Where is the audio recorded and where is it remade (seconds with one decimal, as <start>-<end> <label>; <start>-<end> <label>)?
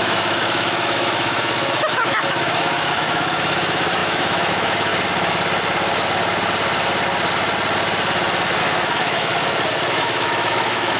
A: 0.0-4.9 remade; 4.9-8.6 recorded; 8.6-9.3 remade; 9.3-9.9 recorded; 9.9-11.0 remade